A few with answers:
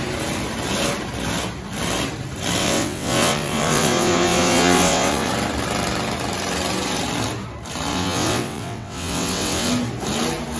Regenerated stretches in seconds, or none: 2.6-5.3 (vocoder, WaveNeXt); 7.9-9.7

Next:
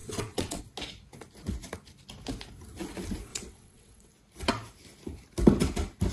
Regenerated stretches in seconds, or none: 0.0-0.6 (vocoder, WaveNeXt); 3.3-4.1

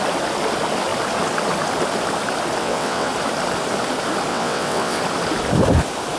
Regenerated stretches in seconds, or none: 2.6-3.1 (vocoder, WaveNeXt); 4.3-5.0